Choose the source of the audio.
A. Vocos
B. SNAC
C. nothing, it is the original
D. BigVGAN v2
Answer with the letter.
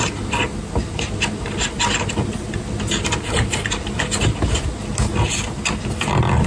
C